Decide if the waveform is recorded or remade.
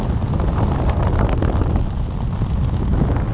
recorded